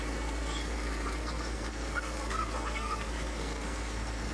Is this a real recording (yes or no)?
no